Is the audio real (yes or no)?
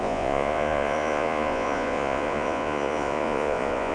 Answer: no